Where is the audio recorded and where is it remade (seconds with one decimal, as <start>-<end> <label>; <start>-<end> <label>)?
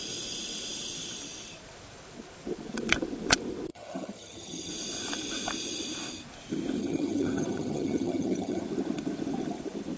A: 0.0-3.7 recorded; 3.7-4.7 remade; 4.7-6.8 recorded; 6.8-8.6 remade; 8.6-10.0 recorded